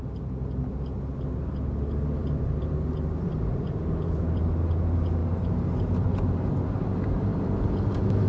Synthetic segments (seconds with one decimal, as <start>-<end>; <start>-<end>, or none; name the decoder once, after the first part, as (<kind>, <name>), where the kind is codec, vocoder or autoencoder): 2.2-4.4 (vocoder, BigVGAN v2); 7.3-8.3